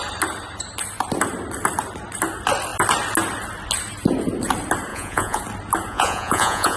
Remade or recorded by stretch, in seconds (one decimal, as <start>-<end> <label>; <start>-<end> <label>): 0.0-4.9 recorded; 4.9-5.4 remade; 5.4-5.9 recorded; 5.9-6.8 remade